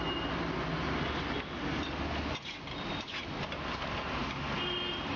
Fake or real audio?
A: real